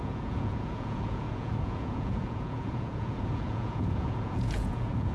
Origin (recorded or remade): remade